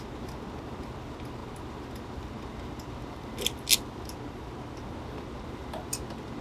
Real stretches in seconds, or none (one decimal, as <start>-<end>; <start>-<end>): 0.0-6.4